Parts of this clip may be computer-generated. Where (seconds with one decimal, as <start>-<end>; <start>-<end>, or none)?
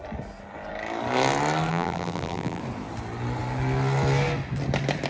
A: 1.7-2.6